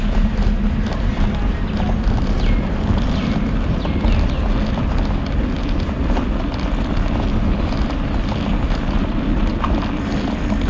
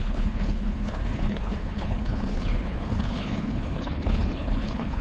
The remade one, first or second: second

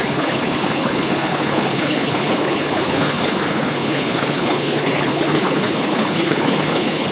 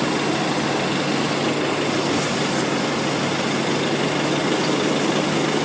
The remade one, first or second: first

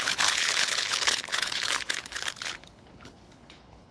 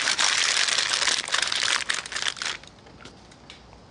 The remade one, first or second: first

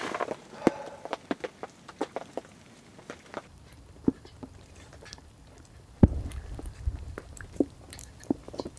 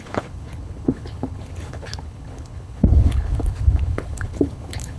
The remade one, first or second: second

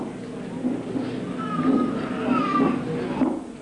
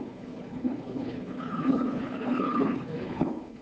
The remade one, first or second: second